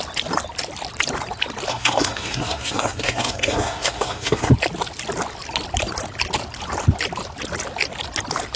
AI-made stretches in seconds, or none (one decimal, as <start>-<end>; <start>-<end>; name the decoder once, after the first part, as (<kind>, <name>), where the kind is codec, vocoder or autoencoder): 1.7-4.5 (codec, SNAC)